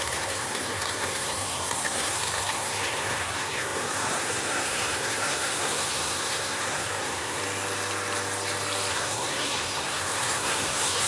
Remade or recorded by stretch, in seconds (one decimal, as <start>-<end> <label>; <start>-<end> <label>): 0.0-7.4 remade; 7.4-8.9 recorded; 8.9-11.1 remade